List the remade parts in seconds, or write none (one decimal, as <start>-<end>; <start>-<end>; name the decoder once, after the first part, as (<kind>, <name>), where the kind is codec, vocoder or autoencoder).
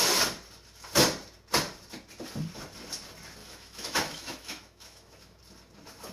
3.4-5.4 (autoencoder, DAC-VAE)